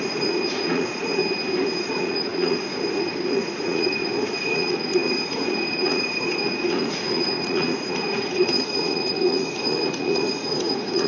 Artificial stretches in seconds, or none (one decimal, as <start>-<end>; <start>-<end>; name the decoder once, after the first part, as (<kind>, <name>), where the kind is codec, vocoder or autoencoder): 0.0-1.2 (vocoder, Vocos); 1.8-11.1